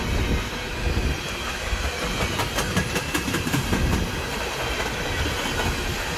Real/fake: real